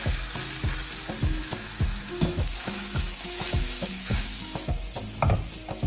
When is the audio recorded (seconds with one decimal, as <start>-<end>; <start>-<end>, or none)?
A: 0.0-1.2; 4.7-5.9